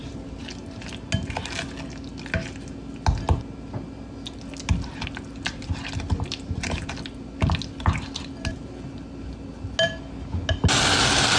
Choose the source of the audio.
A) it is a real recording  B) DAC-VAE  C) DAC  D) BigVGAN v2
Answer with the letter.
A